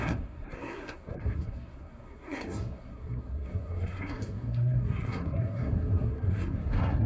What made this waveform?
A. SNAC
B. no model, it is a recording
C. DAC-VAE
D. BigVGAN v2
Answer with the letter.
A